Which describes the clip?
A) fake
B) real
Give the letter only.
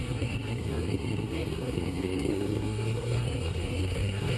A